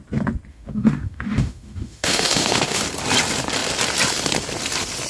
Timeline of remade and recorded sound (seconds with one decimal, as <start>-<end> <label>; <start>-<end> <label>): 0.0-0.5 recorded; 0.5-2.8 remade; 2.8-5.1 recorded

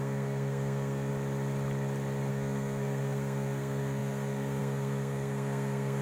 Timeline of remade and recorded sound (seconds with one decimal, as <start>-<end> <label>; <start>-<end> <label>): 0.0-1.1 remade; 1.1-2.3 recorded; 2.3-6.0 remade